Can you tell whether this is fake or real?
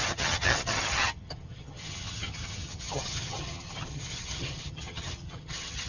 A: fake